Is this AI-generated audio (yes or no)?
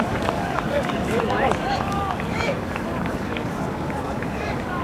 yes